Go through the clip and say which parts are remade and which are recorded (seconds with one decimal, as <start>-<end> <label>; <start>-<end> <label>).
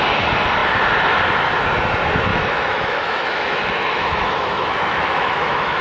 0.0-2.3 recorded; 2.3-5.8 remade